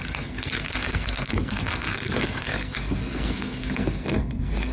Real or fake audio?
fake